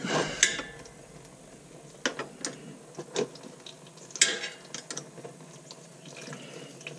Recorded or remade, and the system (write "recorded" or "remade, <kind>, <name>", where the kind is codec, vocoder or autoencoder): recorded